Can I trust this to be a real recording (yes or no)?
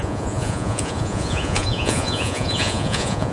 no